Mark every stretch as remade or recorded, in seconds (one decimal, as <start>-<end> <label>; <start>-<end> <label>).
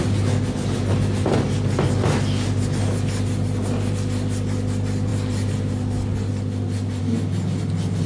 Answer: 0.0-8.1 recorded